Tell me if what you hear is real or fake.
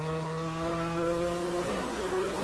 fake